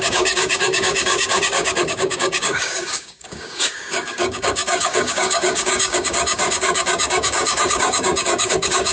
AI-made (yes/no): yes